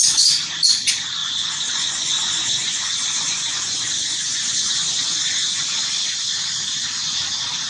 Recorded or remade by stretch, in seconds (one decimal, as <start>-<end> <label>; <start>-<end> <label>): 0.0-1.2 recorded; 1.2-5.6 remade; 5.6-7.7 recorded